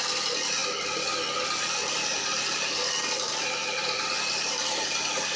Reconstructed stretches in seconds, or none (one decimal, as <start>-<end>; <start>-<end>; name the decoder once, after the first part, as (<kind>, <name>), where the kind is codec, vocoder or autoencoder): none